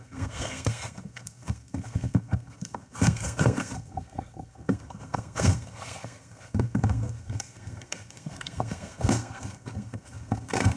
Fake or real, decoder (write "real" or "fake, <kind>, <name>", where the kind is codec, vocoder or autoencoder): fake, codec, SNAC